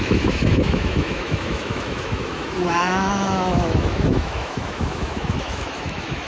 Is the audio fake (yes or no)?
yes